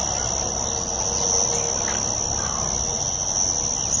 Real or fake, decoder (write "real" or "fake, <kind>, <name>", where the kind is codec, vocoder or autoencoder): real